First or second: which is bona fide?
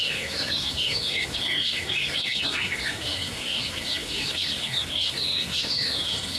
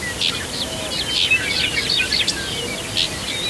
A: second